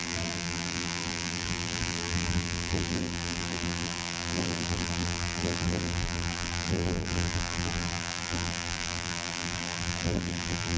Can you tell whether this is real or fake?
fake